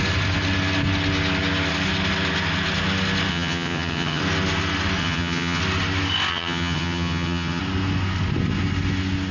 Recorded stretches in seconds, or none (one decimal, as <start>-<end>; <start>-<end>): 0.0-3.3; 4.2-5.0; 5.6-6.3; 7.6-9.3